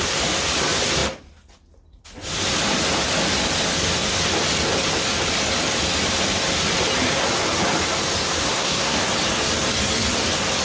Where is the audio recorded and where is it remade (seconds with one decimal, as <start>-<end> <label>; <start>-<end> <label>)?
0.0-8.4 recorded; 8.4-9.0 remade; 9.0-10.6 recorded